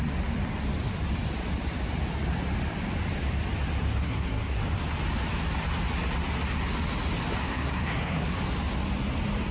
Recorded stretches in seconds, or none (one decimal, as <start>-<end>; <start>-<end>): 0.0-4.0; 4.6-7.4; 8.4-9.5